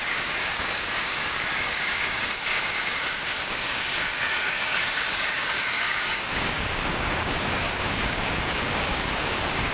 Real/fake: fake